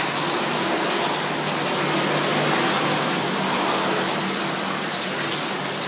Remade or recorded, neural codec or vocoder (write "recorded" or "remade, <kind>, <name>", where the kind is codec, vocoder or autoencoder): recorded